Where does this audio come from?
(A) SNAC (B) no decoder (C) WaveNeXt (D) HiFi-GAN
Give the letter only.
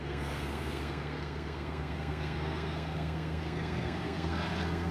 A